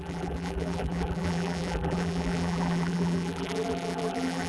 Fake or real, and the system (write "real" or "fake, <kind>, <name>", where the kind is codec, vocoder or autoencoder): fake, vocoder, BigVGAN v2